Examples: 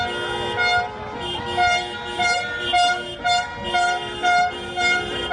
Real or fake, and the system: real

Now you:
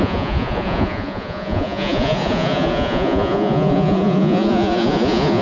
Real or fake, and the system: fake, vocoder, Vocos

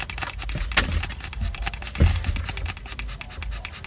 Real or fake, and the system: real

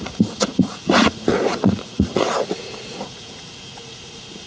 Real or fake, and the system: fake, vocoder, Vocos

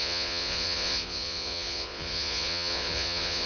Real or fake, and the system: fake, vocoder, Vocos